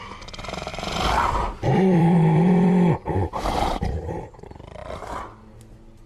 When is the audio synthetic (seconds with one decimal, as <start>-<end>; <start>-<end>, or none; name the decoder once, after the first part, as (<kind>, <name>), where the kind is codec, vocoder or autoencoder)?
0.7-3.0 (vocoder, BigVGAN v2)